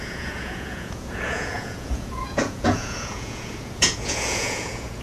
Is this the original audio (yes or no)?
no